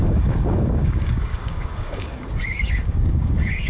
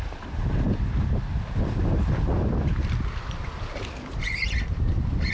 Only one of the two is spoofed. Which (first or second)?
first